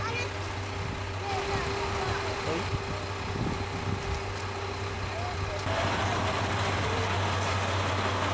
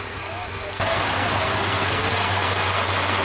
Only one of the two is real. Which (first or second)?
first